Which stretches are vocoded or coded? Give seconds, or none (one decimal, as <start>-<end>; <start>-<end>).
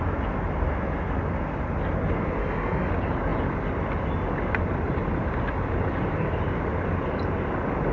2.4-2.9